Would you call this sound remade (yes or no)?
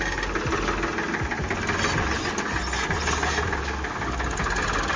no